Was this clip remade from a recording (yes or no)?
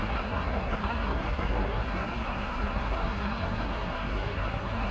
yes